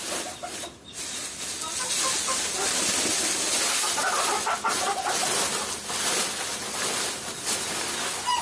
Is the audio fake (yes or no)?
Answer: no